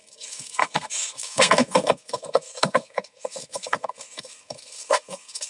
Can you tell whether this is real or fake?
fake